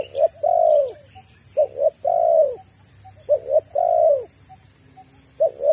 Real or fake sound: real